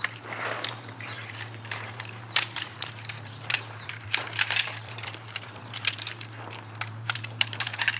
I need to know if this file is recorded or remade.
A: remade